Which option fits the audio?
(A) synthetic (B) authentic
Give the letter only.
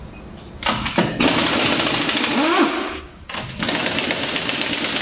B